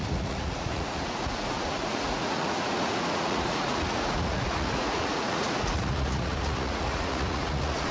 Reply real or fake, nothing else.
fake